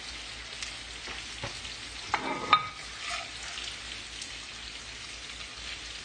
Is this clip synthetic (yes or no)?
no